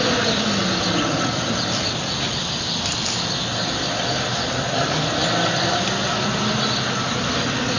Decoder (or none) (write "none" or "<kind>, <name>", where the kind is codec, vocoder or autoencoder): none